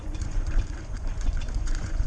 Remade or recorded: remade